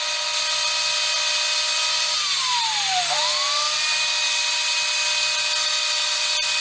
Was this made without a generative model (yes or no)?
yes